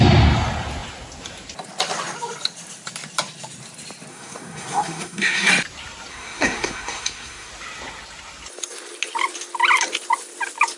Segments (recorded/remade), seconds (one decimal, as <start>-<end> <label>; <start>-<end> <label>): 0.0-4.1 recorded; 4.1-5.5 remade; 5.5-6.1 recorded; 6.1-7.5 remade; 7.5-10.8 recorded